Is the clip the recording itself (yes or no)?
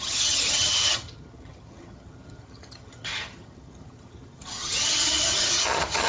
no